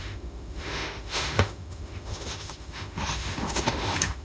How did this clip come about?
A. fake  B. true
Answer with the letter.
A